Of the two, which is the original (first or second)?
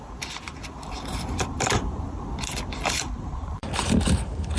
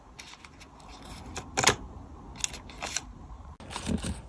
second